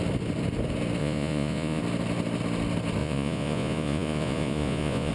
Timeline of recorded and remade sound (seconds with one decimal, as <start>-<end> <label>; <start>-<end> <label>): 0.0-1.0 recorded; 1.0-1.8 remade; 1.8-3.0 recorded; 3.0-5.1 remade